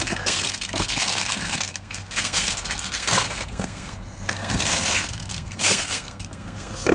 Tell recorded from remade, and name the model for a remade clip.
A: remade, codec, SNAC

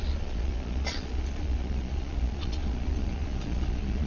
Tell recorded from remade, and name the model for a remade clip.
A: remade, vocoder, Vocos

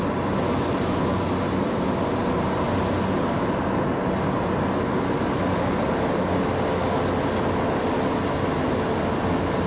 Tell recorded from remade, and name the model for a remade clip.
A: recorded